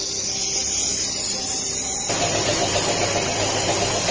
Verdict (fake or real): real